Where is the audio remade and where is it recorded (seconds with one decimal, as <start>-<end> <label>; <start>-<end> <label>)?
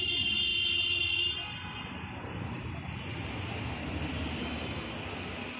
0.0-4.4 recorded; 4.4-4.9 remade; 4.9-5.6 recorded